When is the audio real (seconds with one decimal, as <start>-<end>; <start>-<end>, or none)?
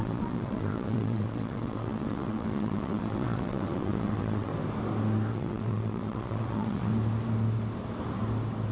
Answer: 4.5-5.3; 6.9-8.7